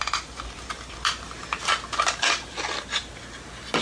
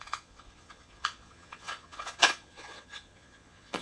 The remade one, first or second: second